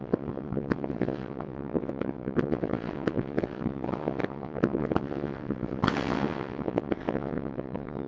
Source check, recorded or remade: remade